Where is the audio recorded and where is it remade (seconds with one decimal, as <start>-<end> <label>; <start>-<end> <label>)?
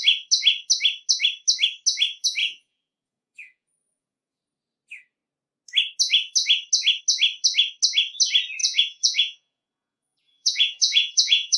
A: 0.0-2.4 recorded; 2.4-4.4 remade; 4.4-8.6 recorded; 8.6-11.6 remade